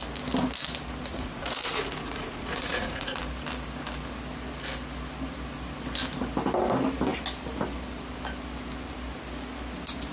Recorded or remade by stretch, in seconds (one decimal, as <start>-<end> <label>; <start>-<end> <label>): 0.0-1.1 recorded; 1.1-3.2 remade; 3.2-10.1 recorded

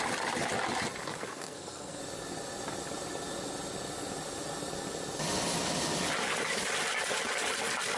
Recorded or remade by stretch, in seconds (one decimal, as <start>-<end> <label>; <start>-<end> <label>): 0.0-1.1 recorded; 1.1-2.0 remade; 2.0-8.0 recorded

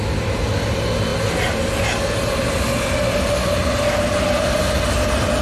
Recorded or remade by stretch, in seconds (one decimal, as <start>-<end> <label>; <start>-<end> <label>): 0.0-5.4 recorded

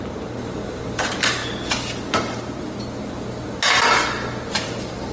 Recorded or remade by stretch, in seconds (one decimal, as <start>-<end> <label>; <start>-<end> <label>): 0.0-1.4 remade; 1.4-4.5 recorded; 4.5-5.1 remade

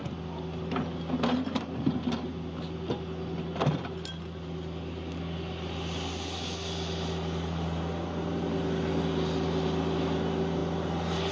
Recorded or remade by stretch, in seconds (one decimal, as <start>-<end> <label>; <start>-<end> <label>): 0.0-11.3 recorded

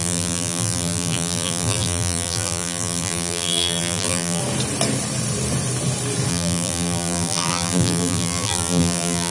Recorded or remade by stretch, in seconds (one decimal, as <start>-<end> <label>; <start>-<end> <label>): 0.0-4.4 remade; 4.4-6.3 recorded; 6.3-9.3 remade

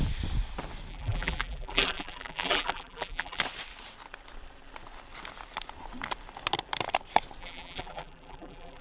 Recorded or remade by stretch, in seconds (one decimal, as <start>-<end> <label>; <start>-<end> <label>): 0.0-0.9 recorded; 0.9-3.4 remade; 3.4-7.4 recorded; 7.4-8.8 remade